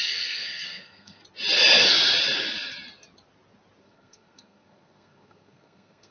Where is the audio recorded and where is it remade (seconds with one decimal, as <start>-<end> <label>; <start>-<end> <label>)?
0.0-1.2 remade; 1.2-3.8 recorded; 3.8-6.1 remade

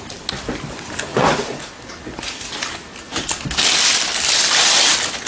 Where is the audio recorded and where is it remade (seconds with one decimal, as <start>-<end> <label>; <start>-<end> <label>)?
0.0-1.1 recorded; 1.1-1.7 remade; 1.7-5.3 recorded

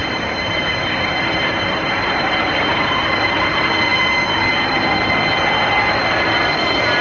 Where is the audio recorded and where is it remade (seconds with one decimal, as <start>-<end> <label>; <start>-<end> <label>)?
0.0-3.5 remade; 3.5-7.0 recorded

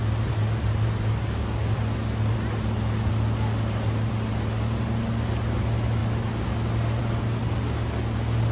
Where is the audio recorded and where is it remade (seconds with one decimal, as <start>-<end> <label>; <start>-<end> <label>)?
0.0-8.5 recorded